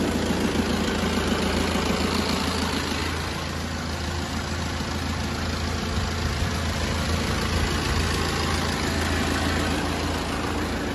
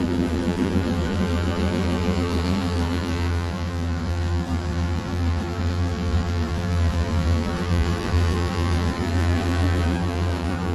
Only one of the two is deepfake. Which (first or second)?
second